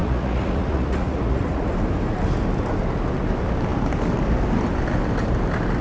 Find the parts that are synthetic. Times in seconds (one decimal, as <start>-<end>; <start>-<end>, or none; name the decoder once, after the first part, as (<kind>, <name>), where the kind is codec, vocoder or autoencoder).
0.0-1.7 (vocoder, Vocos)